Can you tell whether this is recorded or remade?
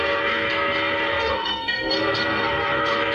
remade